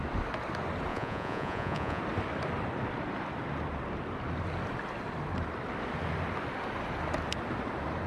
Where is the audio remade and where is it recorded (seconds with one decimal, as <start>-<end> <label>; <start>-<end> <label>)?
0.0-0.9 recorded; 0.9-2.0 remade; 2.0-8.1 recorded

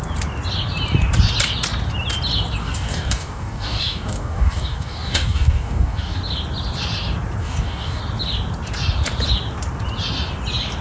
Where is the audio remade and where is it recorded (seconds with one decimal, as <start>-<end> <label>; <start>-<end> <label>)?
0.0-2.6 recorded; 2.6-6.2 remade; 6.2-7.4 recorded; 7.4-8.0 remade; 8.0-10.8 recorded

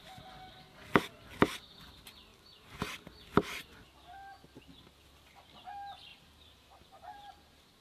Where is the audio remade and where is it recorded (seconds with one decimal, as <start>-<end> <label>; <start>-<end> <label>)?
0.0-2.3 recorded; 2.3-3.0 remade; 3.0-6.1 recorded; 6.1-7.3 remade; 7.3-7.8 recorded

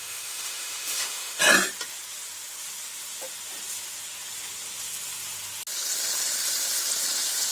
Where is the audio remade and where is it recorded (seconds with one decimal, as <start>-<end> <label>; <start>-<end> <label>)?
0.0-1.4 remade; 1.4-7.5 recorded

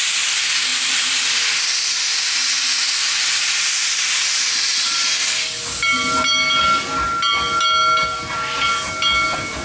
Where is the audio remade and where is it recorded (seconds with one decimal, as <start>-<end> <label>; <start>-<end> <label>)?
0.0-9.6 recorded